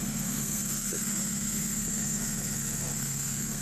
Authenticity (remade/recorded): remade